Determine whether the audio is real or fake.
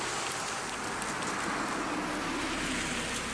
real